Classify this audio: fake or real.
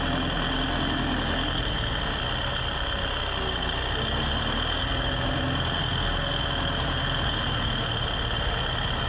real